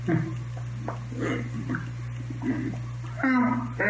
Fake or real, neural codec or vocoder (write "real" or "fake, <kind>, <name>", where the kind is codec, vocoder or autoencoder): real